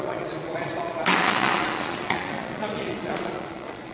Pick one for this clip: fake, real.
fake